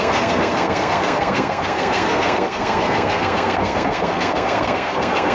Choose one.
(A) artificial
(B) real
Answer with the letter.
A